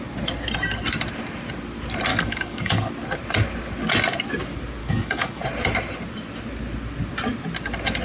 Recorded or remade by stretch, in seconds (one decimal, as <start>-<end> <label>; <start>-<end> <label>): 0.0-2.1 recorded; 2.1-2.9 remade; 2.9-4.8 recorded; 4.8-5.4 remade; 5.4-8.0 recorded